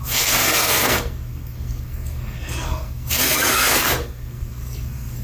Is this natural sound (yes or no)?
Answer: no